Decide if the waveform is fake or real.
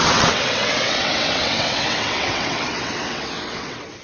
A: fake